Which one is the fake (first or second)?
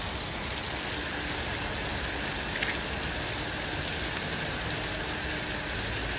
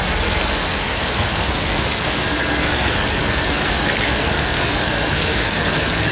second